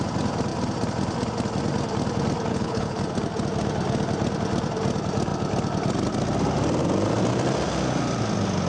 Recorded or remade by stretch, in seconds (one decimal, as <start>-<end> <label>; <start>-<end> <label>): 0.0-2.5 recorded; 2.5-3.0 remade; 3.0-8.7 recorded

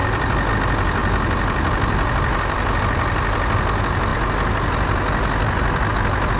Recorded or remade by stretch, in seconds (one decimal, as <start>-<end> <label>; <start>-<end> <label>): 0.0-6.4 recorded

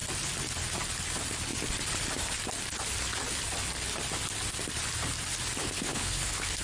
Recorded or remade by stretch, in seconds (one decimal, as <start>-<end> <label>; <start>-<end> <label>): 0.0-5.6 recorded; 5.6-6.6 remade